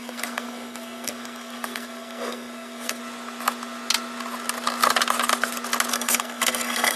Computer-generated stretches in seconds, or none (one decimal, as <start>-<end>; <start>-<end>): 0.0-3.0; 5.9-7.0